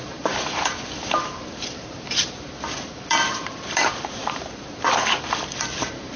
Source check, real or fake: fake